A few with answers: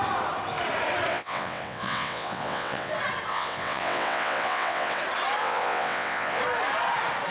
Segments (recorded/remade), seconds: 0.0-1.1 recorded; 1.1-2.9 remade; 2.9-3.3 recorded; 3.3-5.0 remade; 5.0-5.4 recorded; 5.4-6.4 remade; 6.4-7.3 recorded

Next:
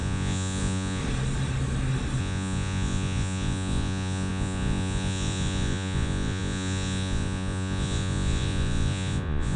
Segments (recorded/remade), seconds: 0.0-1.0 remade; 1.0-2.2 recorded; 2.2-9.6 remade

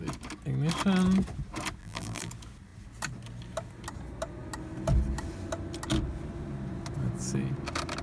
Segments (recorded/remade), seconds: 0.0-1.8 recorded; 1.8-2.3 remade; 2.3-8.0 recorded

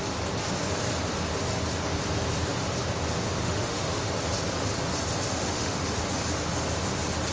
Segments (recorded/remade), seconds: 0.0-3.4 recorded; 3.4-4.1 remade; 4.1-5.3 recorded; 5.3-6.0 remade; 6.0-7.3 recorded

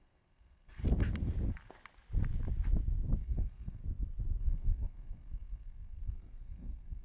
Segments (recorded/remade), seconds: 0.0-0.8 remade; 0.8-3.2 recorded; 3.2-3.8 remade; 3.8-4.4 recorded; 4.4-7.0 remade

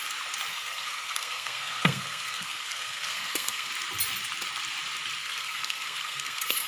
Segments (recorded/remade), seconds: 0.0-0.5 recorded; 0.5-3.7 remade; 3.7-5.2 recorded; 5.2-6.7 remade